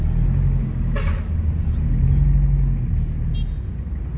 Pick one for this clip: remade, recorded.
recorded